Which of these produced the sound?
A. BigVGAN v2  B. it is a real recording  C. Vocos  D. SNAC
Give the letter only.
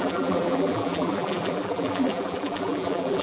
A